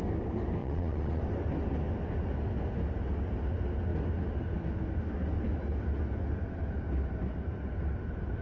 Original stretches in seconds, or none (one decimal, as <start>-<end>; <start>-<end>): 0.0-0.6; 1.2-8.4